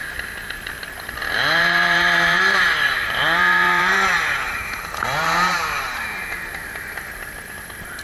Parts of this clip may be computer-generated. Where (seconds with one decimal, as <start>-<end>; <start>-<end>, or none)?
1.6-8.0